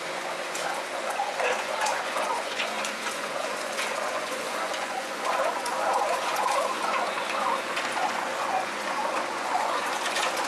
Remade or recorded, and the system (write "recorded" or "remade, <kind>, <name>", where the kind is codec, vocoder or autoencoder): remade, vocoder, Vocos